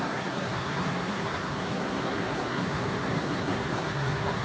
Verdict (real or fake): fake